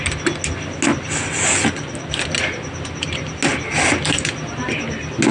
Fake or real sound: real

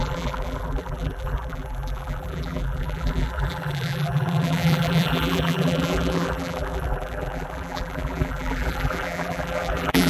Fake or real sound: fake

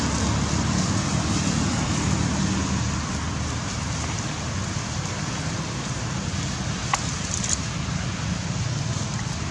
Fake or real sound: real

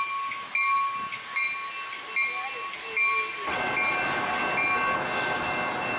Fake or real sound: real